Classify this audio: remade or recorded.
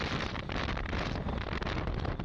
recorded